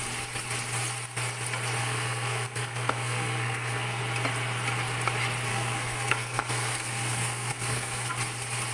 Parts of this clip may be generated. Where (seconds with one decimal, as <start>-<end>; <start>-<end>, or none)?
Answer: 1.8-4.0; 5.5-8.1